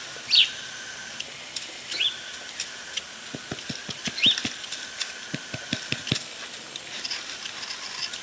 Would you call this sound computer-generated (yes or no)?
no